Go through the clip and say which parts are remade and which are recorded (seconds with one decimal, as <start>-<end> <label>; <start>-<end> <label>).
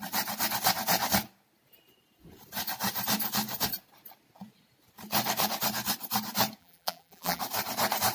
0.0-6.6 recorded; 6.6-7.4 remade; 7.4-8.1 recorded